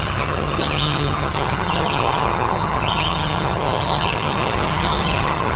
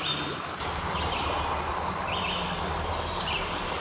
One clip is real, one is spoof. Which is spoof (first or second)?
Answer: first